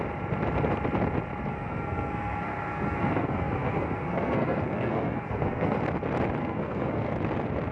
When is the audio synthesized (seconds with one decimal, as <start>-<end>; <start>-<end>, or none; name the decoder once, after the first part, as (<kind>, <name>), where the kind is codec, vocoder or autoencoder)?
1.5-5.8 (codec, SNAC); 6.4-7.1